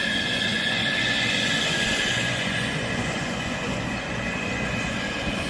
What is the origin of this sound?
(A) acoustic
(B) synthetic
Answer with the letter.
B